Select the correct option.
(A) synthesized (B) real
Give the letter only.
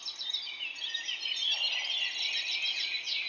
B